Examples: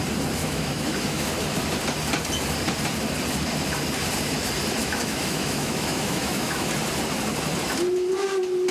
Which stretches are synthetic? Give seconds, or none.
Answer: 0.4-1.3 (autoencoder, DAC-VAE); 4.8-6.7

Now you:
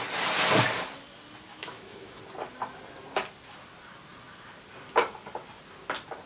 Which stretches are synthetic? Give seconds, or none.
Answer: 1.5-2.2 (autoencoder, DAC-VAE)

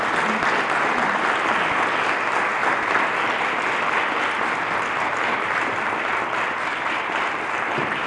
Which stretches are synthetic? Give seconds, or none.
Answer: none

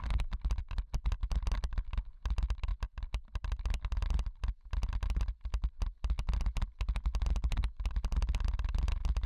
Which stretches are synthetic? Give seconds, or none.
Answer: none

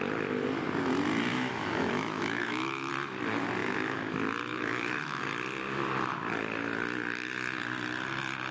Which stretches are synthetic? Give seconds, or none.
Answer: 1.3-2.9 (autoencoder, DAC-VAE); 3.6-4.1; 4.5-5.2